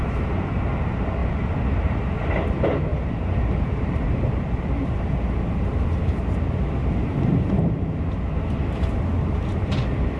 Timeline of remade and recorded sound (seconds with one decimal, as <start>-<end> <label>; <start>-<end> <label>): 0.0-1.2 recorded; 1.2-2.3 remade; 2.3-2.9 recorded; 2.9-4.2 remade; 4.2-6.8 recorded; 6.8-7.5 remade; 7.5-10.2 recorded